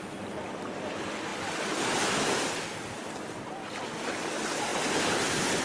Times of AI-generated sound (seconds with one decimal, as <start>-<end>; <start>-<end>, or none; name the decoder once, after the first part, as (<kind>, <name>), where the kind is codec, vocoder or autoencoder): none